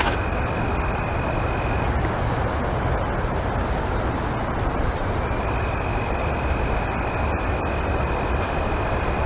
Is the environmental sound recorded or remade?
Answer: recorded